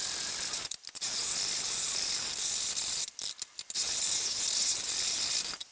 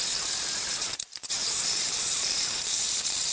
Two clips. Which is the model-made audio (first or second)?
second